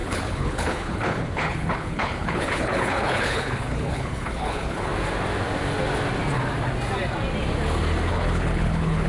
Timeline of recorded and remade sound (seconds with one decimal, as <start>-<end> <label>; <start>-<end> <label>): 0.0-4.9 remade; 4.9-8.1 recorded; 8.1-9.1 remade